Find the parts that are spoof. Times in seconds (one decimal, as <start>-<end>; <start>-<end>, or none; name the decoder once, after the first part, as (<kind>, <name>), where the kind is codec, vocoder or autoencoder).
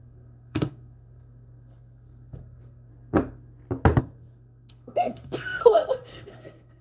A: 0.0-2.9 (codec, SNAC); 4.0-6.8